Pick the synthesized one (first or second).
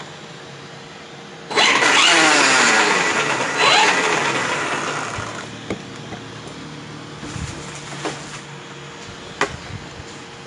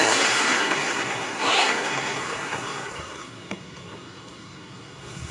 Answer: second